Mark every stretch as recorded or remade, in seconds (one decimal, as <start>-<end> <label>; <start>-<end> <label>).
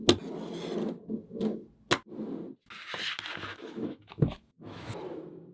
0.0-3.5 recorded; 3.5-4.9 remade; 4.9-5.5 recorded